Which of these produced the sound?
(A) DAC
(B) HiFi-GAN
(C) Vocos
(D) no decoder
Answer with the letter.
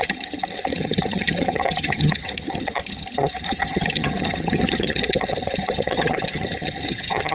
B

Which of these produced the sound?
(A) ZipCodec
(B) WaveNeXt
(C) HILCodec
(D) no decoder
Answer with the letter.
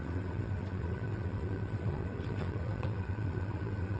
B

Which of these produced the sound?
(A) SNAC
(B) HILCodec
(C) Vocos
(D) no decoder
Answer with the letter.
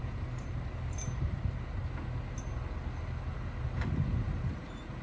D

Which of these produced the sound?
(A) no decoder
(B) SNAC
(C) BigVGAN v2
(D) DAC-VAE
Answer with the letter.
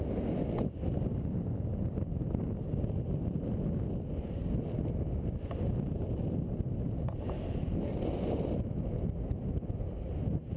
A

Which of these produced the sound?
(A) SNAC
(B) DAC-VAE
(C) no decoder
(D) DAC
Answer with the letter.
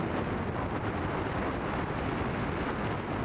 C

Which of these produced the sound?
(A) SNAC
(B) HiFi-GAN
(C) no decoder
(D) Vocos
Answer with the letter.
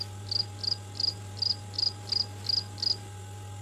C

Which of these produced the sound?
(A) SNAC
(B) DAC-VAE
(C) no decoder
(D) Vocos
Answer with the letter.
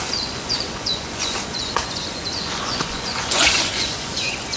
D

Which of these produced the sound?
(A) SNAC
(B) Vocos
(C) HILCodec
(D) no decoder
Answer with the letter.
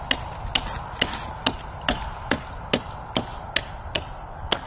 D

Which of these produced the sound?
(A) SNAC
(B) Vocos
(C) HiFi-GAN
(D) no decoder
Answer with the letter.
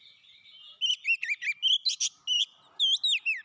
D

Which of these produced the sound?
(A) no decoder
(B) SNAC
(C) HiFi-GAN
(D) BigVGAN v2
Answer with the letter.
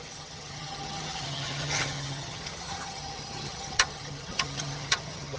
C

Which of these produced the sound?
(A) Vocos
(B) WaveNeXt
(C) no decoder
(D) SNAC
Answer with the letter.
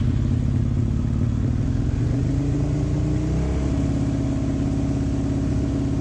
C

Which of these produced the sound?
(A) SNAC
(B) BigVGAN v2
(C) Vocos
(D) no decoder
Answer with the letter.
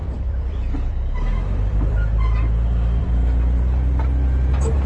B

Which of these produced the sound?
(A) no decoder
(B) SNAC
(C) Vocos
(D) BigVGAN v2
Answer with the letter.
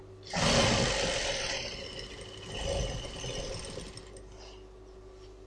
A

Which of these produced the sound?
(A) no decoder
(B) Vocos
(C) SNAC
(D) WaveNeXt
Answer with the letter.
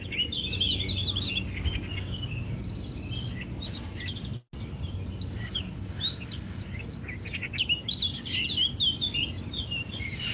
A